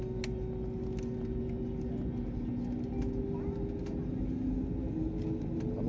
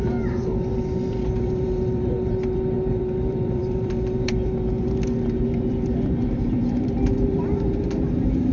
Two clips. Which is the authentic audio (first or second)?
first